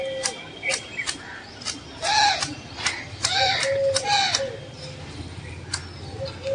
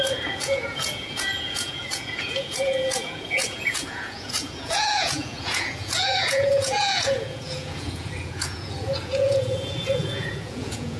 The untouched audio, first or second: first